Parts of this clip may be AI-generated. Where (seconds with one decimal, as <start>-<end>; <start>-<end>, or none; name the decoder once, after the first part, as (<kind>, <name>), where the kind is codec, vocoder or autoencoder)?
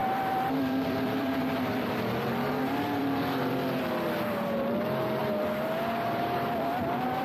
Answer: 0.0-2.5 (vocoder, BigVGAN v2); 3.0-3.8